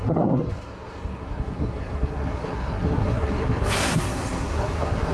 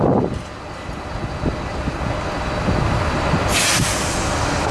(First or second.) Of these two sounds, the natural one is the second